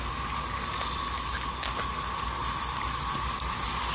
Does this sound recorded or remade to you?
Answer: recorded